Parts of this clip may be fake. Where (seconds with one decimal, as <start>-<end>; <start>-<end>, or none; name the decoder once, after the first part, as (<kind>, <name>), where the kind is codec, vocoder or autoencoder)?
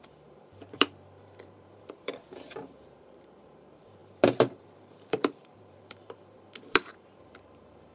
0.0-7.9 (vocoder, BigVGAN v2)